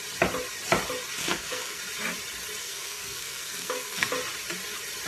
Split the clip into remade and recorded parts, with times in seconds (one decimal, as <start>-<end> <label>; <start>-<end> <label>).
0.0-1.2 recorded; 1.2-1.8 remade; 1.8-2.6 recorded; 2.6-4.1 remade; 4.1-5.1 recorded